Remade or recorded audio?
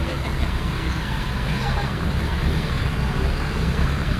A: remade